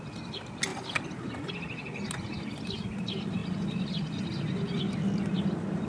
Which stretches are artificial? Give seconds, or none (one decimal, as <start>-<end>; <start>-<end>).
none